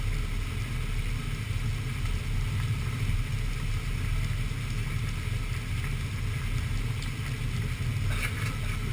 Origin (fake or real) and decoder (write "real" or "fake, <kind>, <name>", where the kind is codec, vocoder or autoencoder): real